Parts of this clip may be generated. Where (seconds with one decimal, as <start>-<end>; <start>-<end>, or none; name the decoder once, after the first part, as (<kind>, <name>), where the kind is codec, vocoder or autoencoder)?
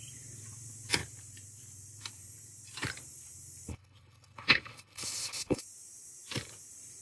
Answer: 3.7-5.6 (codec, HILCodec)